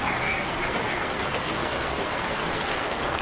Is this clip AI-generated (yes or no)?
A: yes